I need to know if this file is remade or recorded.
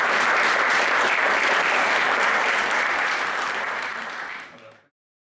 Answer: remade